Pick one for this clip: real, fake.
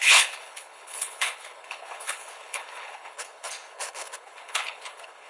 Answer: fake